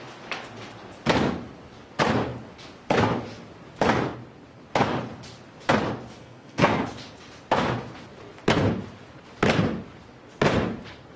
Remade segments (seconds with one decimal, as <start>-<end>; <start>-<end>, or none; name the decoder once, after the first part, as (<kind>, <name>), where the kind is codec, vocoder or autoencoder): 6.2-6.8 (codec, SNAC)